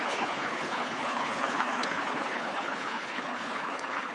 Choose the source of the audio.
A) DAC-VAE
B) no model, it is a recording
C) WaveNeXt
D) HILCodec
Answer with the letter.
D